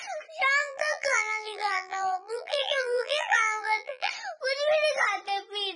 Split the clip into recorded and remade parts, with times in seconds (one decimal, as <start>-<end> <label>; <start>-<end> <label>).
0.0-0.6 recorded; 0.6-4.1 remade; 4.1-5.8 recorded